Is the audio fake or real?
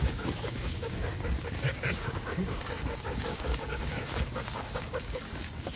fake